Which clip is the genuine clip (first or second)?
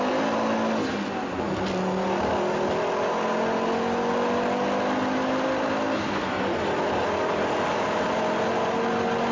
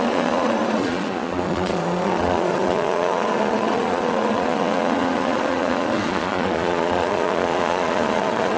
first